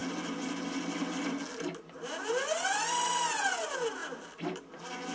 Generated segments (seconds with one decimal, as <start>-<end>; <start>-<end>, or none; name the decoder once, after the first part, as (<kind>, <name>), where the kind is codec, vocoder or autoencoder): none